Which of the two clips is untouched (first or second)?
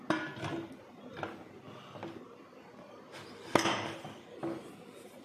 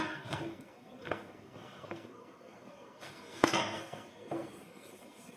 first